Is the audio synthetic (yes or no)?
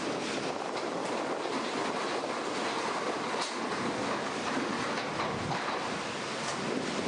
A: no